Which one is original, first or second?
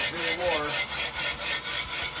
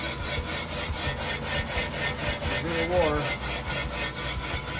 second